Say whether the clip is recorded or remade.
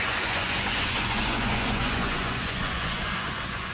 remade